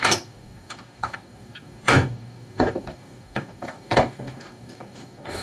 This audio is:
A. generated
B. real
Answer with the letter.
A